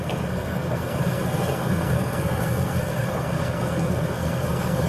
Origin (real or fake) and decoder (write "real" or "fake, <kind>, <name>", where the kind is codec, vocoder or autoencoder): fake, codec, SNAC